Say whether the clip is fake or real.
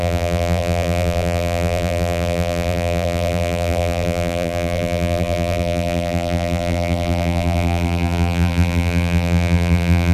fake